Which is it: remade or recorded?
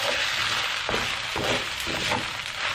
recorded